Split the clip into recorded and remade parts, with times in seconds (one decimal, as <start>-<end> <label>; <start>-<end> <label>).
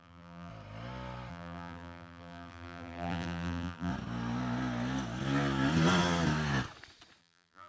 0.0-0.5 remade; 0.5-1.3 recorded; 1.3-3.9 remade; 3.9-7.2 recorded; 7.2-7.7 remade